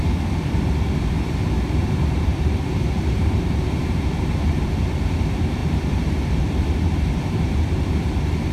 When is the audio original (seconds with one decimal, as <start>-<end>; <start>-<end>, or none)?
none